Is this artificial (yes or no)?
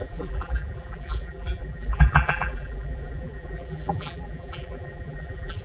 yes